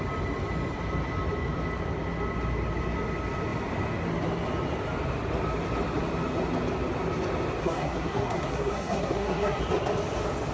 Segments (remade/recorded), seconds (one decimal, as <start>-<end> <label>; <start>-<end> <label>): 0.0-7.6 recorded; 7.6-9.6 remade; 9.6-10.5 recorded